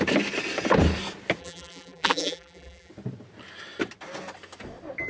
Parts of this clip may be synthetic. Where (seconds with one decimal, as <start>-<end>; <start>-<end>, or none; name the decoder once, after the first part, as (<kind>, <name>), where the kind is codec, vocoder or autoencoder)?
1.4-2.9 (vocoder, BigVGAN v2)